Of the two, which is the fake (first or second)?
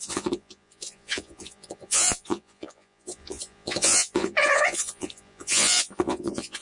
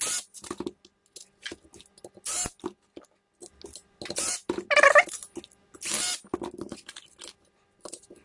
first